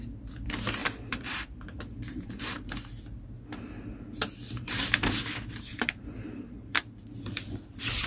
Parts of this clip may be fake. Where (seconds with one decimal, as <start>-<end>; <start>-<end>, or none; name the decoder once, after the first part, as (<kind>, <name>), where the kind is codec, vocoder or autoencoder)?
0.8-2.7 (vocoder, BigVGAN v2); 5.7-6.9